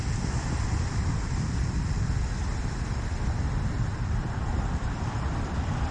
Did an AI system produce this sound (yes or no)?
yes